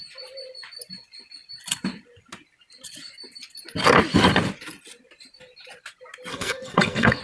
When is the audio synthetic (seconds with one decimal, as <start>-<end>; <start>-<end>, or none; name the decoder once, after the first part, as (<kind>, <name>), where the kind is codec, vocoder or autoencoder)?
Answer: 6.3-7.2 (codec, SNAC)